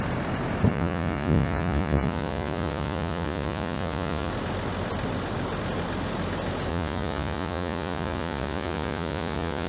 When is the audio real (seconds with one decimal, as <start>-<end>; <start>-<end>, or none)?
0.0-0.7; 4.3-6.7